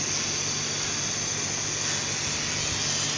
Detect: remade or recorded recorded